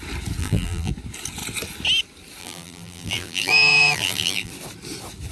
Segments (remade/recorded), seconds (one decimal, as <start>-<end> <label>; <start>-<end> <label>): 0.0-0.4 recorded; 0.4-0.9 remade; 0.9-2.4 recorded; 2.4-4.5 remade; 4.5-5.3 recorded